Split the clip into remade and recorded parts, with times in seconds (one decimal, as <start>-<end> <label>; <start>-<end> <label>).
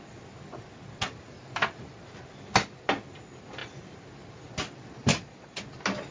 0.0-5.1 recorded; 5.1-5.6 remade; 5.6-6.1 recorded